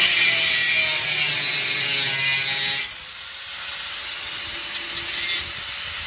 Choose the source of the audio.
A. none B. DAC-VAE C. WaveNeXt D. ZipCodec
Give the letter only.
A